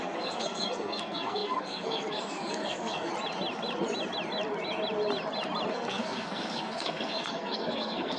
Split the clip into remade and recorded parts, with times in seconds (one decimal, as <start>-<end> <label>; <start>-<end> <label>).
0.0-3.1 remade; 3.1-5.7 recorded; 5.7-8.2 remade